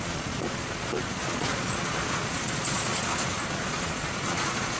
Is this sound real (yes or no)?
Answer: no